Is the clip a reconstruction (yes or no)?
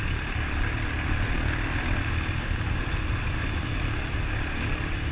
no